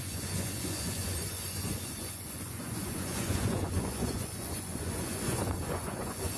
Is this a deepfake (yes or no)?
yes